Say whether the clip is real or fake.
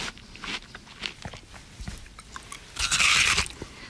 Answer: real